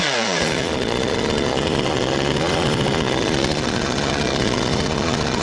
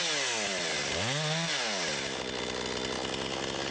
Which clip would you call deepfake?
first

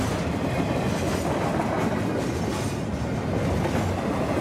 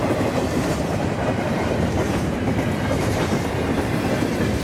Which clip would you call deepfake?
second